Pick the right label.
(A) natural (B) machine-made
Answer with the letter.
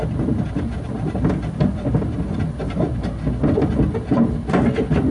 A